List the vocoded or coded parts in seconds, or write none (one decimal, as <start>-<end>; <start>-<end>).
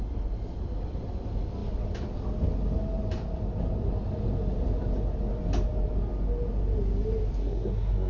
7.4-8.1